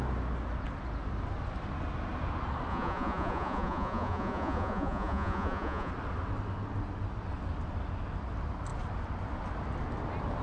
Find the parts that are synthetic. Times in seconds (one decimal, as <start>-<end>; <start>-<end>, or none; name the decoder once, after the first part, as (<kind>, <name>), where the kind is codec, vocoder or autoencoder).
2.7-5.9 (vocoder, Vocos)